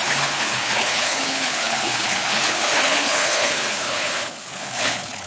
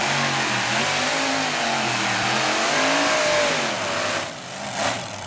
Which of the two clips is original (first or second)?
second